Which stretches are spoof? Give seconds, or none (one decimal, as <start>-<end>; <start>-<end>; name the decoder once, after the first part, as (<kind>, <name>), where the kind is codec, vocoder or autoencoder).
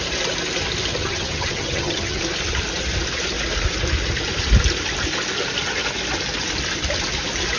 0.9-2.2 (vocoder, HiFi-GAN)